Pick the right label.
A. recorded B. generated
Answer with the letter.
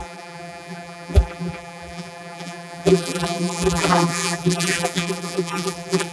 B